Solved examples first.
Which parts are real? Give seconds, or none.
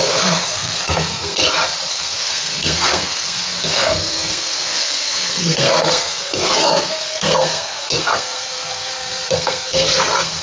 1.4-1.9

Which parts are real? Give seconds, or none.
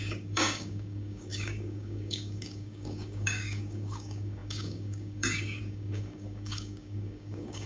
none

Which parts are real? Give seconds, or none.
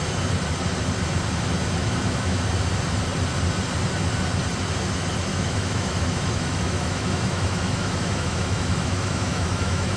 0.0-1.8; 2.4-5.3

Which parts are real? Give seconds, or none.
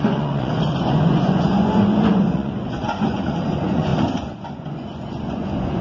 none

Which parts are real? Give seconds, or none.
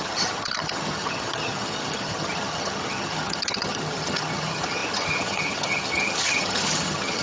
none